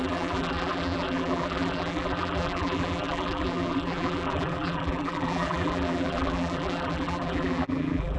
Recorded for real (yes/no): no